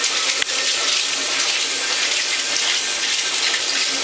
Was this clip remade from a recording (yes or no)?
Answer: no